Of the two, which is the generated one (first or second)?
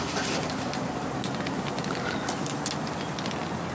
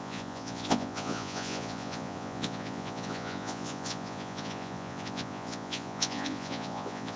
second